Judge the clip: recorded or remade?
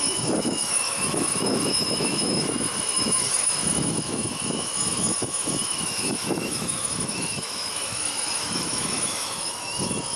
remade